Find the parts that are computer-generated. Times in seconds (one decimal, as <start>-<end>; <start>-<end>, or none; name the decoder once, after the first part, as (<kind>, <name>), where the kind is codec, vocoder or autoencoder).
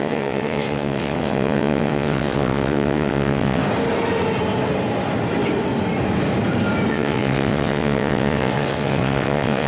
0.0-3.6 (vocoder, WaveNeXt); 6.9-9.7